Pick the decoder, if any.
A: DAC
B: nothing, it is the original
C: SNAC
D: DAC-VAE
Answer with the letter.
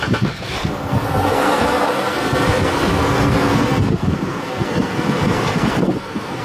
C